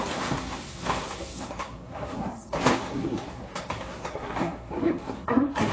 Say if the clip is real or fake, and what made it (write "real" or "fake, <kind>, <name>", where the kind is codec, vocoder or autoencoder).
fake, codec, SNAC